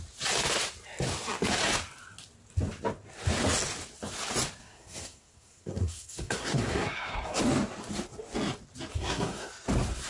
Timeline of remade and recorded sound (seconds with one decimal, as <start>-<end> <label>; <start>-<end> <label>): 0.0-4.6 recorded; 4.6-7.4 remade; 7.4-8.9 recorded; 8.9-9.5 remade; 9.5-10.1 recorded